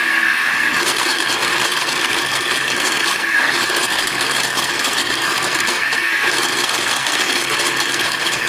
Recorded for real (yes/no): no